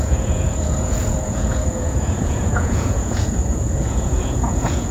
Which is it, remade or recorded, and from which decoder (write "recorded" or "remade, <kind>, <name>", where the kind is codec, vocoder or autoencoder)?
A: remade, vocoder, Vocos